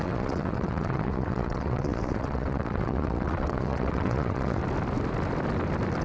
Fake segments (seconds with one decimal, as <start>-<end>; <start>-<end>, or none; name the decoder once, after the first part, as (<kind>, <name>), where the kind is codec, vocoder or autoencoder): 0.0-4.6 (vocoder, WaveNeXt)